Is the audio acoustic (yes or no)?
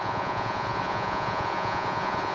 no